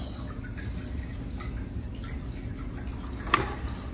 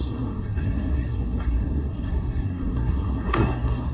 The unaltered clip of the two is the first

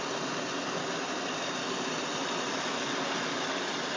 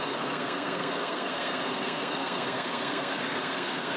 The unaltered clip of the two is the first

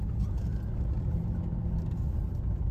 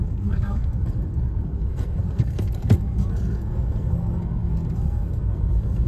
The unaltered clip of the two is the first